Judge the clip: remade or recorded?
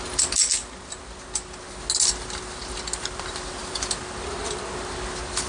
recorded